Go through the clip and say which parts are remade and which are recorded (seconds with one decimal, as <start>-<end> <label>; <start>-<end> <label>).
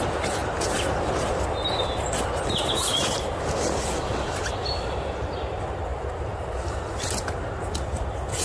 0.0-8.4 recorded